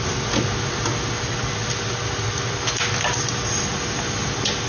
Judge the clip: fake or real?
real